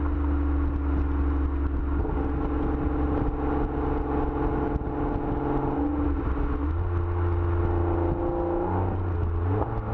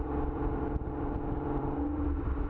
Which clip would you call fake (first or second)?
second